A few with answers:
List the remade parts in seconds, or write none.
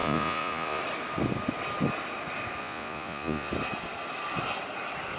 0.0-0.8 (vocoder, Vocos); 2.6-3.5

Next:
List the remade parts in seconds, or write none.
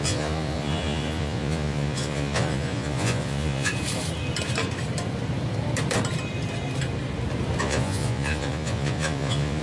0.0-3.7 (vocoder, Vocos); 7.6-9.6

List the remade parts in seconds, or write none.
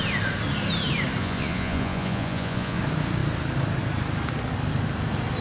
1.2-2.8 (vocoder, Vocos)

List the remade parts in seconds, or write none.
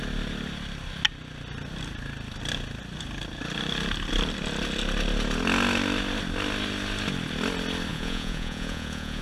7.9-9.2 (vocoder, Vocos)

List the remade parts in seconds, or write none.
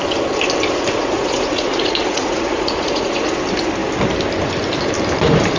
1.0-3.3 (vocoder, Vocos)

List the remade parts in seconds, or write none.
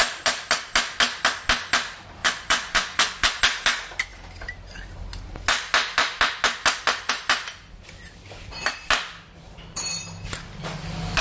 2.2-3.4 (vocoder, Vocos)